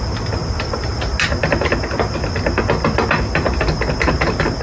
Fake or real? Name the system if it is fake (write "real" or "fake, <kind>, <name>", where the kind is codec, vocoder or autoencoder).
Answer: real